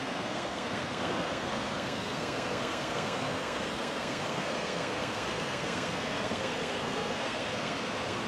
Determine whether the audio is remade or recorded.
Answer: remade